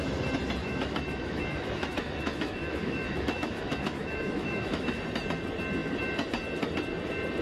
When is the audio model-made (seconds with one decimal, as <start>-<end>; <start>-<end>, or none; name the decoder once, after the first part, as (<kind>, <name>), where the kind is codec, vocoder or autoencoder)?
0.6-5.0 (autoencoder, DAC-VAE)